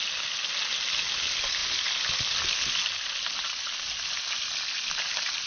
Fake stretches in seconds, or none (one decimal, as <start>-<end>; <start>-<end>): none